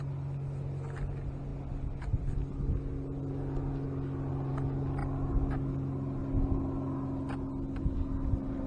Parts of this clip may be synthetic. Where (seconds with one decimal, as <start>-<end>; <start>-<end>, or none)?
none